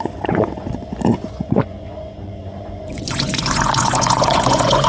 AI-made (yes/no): yes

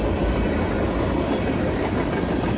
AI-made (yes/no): no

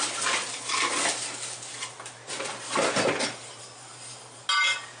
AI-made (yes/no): no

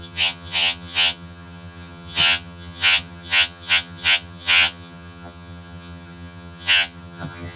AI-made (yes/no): yes